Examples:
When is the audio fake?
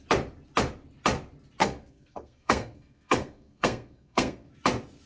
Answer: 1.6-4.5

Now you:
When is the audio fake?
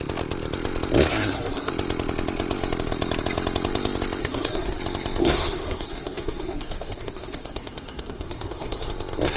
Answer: 1.1-1.7; 4.2-4.8; 5.2-8.9